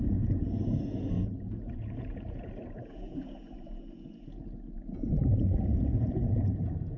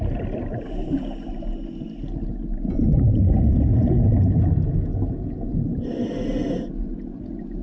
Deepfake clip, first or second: first